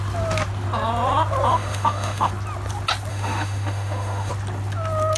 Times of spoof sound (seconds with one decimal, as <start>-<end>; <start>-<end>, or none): 1.5-2.3; 3.1-4.3